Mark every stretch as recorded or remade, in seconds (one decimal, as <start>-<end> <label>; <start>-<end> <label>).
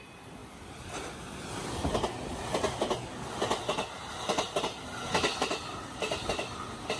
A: 0.0-7.0 recorded